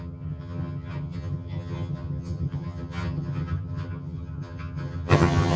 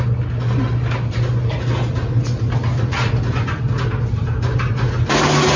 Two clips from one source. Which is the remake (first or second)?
first